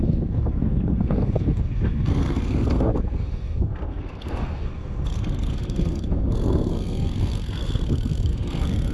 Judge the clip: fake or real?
fake